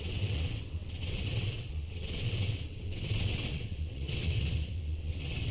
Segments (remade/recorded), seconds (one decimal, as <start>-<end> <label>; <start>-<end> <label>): 0.0-5.5 remade